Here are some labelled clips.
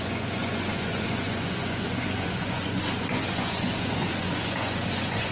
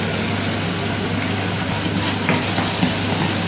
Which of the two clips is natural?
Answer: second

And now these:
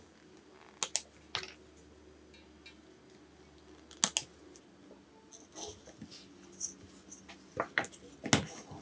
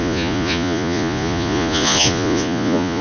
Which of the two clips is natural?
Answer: first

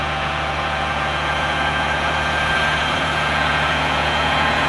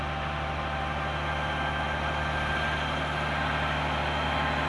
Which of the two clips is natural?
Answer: second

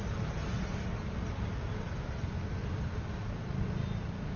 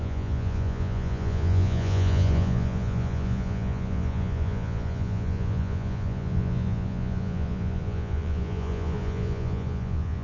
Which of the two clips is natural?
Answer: first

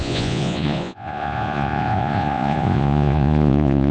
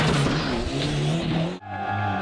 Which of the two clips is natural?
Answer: second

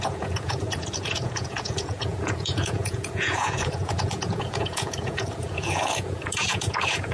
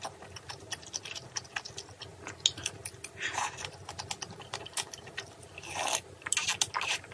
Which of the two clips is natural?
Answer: second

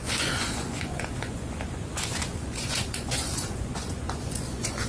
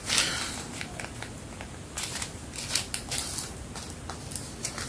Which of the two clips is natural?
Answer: second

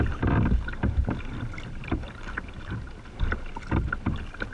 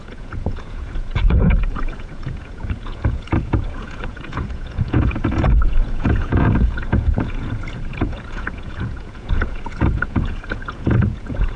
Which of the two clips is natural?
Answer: first